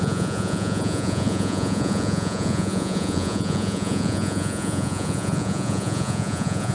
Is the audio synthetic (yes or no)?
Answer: yes